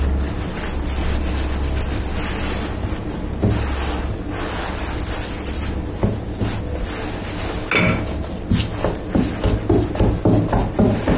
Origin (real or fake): real